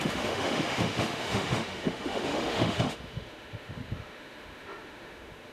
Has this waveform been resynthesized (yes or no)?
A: yes